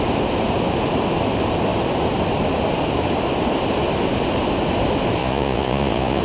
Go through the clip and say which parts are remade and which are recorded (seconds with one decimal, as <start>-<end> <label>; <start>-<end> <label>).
0.0-5.2 recorded; 5.2-6.2 remade